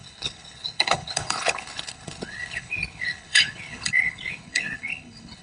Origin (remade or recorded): remade